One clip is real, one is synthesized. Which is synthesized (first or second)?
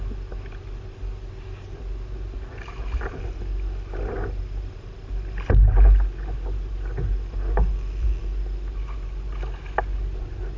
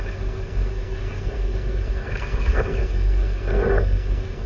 second